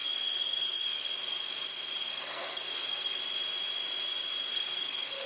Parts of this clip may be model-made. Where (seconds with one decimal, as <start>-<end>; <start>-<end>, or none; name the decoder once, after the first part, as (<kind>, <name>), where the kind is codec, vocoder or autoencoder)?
0.0-1.1 (codec, SNAC); 2.0-3.2; 4.5-5.3